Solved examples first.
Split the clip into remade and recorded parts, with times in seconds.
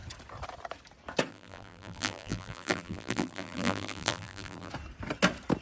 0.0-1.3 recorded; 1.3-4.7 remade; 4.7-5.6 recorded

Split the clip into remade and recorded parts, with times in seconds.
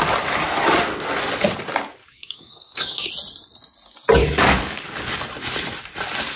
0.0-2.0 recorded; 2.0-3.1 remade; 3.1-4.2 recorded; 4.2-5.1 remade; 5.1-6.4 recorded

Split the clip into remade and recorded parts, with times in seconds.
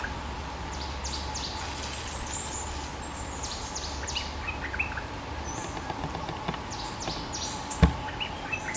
0.0-8.8 recorded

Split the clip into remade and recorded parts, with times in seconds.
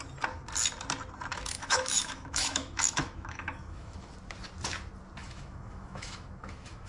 0.0-1.3 recorded; 1.3-4.1 remade; 4.1-5.2 recorded; 5.2-6.9 remade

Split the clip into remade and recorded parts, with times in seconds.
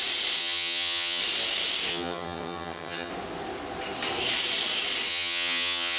0.0-0.4 recorded; 0.4-1.2 remade; 1.2-1.9 recorded; 1.9-3.1 remade; 3.1-5.1 recorded; 5.1-6.0 remade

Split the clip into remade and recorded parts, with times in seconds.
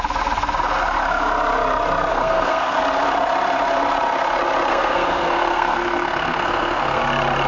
0.0-2.1 recorded; 2.1-2.8 remade; 2.8-4.7 recorded; 4.7-7.0 remade; 7.0-7.5 recorded